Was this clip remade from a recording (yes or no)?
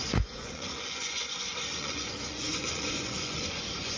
yes